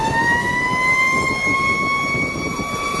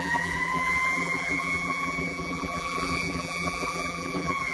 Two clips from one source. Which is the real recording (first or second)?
first